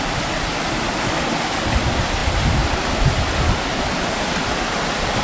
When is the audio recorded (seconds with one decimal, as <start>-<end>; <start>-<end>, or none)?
none